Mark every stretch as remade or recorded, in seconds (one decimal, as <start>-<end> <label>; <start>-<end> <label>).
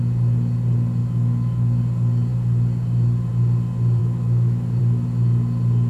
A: 0.0-1.0 recorded; 1.0-1.8 remade; 1.8-4.0 recorded; 4.0-4.8 remade; 4.8-5.9 recorded